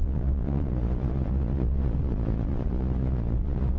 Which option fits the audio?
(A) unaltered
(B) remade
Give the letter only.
B